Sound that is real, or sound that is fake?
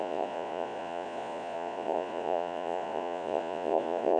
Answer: fake